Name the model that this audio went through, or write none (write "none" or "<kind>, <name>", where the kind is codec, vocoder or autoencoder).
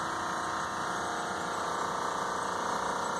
none